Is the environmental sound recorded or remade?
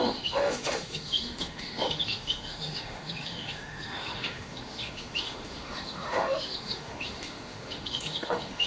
remade